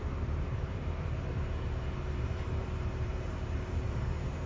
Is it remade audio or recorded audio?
remade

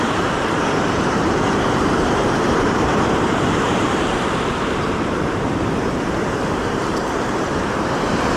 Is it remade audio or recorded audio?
remade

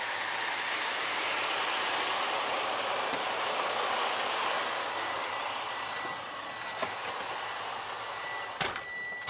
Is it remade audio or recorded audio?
recorded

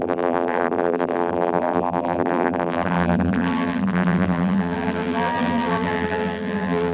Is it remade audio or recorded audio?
remade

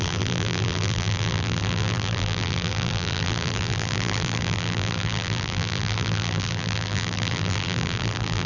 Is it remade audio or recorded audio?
remade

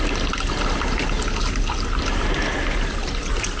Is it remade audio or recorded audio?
recorded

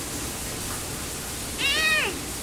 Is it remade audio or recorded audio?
recorded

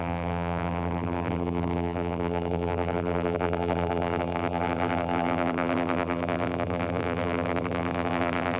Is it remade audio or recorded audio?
remade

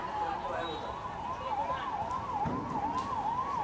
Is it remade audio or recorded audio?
recorded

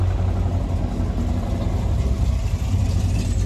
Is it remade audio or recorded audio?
recorded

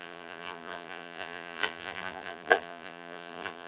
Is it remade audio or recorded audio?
remade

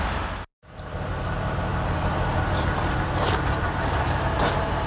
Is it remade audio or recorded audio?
recorded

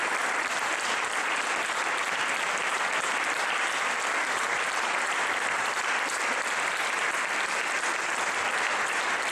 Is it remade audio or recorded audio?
remade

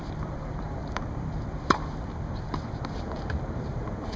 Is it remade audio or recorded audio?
remade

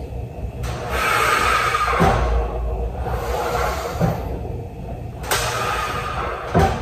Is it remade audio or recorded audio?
recorded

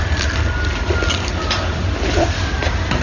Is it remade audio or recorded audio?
recorded